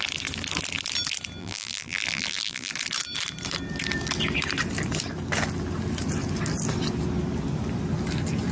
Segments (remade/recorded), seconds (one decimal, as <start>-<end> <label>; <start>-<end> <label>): 0.0-1.4 recorded; 1.4-2.7 remade; 2.7-8.5 recorded